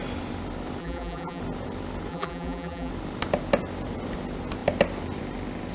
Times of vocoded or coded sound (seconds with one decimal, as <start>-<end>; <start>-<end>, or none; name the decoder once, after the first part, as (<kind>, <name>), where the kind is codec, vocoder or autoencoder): 0.8-1.4 (vocoder, BigVGAN v2); 2.1-2.9